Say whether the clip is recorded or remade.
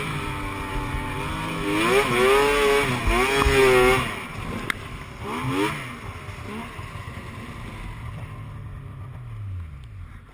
recorded